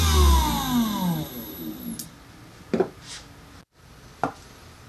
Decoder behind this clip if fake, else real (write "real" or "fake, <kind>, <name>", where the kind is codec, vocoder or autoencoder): real